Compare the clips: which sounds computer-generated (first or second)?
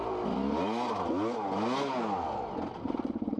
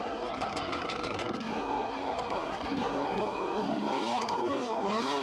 second